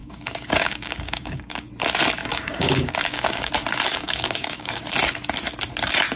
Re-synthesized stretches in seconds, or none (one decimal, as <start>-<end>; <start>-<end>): 0.0-1.7; 2.2-3.5; 3.9-4.8